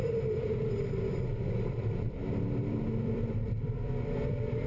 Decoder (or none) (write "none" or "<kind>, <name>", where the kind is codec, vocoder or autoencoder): vocoder, BigVGAN v2